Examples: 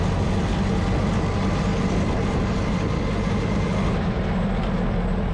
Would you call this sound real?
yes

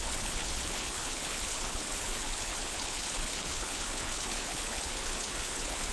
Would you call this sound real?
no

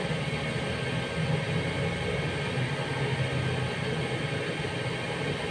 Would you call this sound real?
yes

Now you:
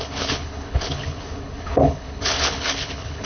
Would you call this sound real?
no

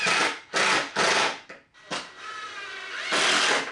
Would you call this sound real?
yes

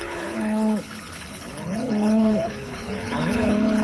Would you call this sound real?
no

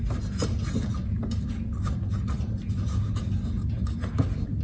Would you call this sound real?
yes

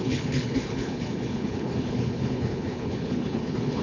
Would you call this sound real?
no